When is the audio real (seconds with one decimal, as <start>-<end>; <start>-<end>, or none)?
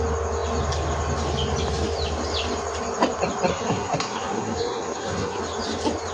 0.0-3.5; 5.4-6.1